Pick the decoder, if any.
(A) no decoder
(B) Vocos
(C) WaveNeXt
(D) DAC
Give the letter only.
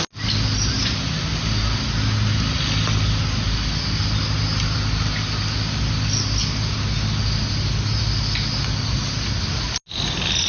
A